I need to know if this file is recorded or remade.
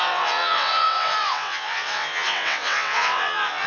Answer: remade